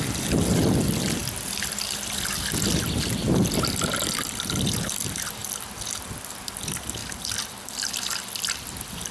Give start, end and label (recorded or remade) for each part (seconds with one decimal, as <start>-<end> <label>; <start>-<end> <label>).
0.0-7.0 recorded; 7.0-7.9 remade; 7.9-9.1 recorded